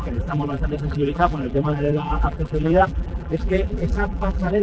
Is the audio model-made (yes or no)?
yes